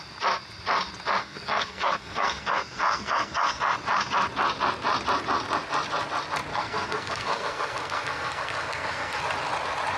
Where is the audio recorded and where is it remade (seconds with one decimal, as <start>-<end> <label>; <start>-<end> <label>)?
0.0-1.2 recorded; 1.2-3.6 remade; 3.6-6.5 recorded; 6.5-9.2 remade; 9.2-10.0 recorded